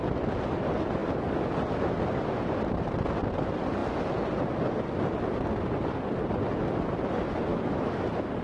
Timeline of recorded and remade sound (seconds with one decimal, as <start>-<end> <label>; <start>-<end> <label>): 0.0-7.5 recorded; 7.5-8.0 remade; 8.0-8.4 recorded